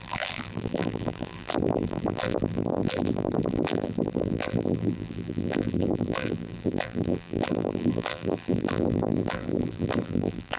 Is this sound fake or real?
fake